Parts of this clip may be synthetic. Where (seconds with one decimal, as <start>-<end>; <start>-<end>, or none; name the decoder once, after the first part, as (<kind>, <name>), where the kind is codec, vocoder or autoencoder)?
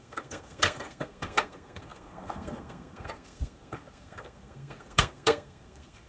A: 0.0-6.1 (codec, SNAC)